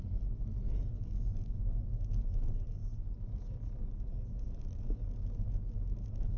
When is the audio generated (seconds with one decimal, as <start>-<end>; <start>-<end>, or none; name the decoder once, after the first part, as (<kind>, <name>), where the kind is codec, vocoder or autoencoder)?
none